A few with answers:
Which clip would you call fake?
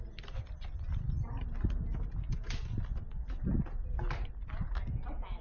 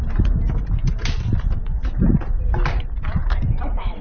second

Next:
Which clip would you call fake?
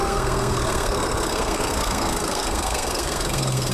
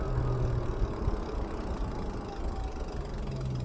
first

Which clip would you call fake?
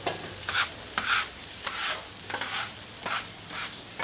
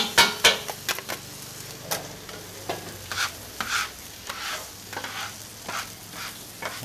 first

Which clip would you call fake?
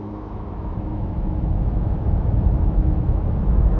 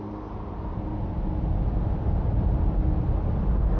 first